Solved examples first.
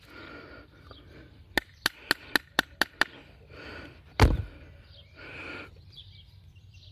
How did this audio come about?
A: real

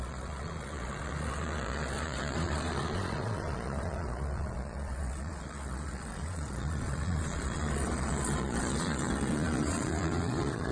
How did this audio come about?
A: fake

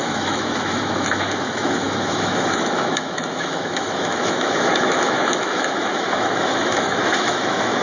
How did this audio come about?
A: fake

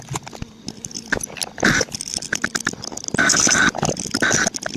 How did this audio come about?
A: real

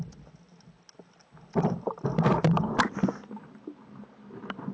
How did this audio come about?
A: real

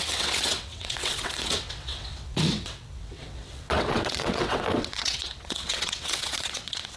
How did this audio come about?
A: fake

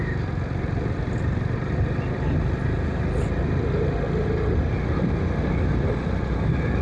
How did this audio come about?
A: real